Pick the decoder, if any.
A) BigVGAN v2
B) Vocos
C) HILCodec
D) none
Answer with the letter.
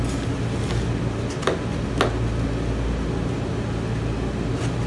D